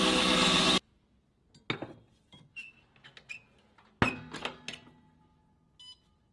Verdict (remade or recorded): recorded